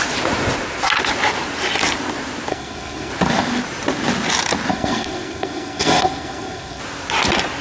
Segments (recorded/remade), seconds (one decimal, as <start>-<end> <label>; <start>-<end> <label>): 0.0-2.5 recorded; 2.5-3.1 remade; 3.1-4.7 recorded; 4.7-6.8 remade; 6.8-7.6 recorded